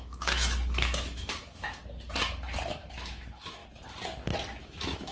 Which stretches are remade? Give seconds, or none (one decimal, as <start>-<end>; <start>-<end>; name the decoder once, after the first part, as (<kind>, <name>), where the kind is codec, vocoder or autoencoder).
0.0-1.8 (autoencoder, DAC-VAE); 2.9-3.6; 4.6-5.1